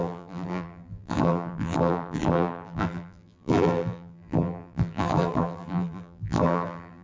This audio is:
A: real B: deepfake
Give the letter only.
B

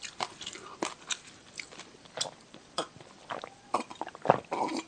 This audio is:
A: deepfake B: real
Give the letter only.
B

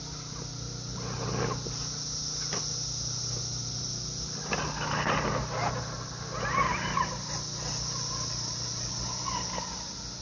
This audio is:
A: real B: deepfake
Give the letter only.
A